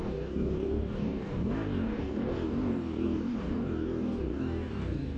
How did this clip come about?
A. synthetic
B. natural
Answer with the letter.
A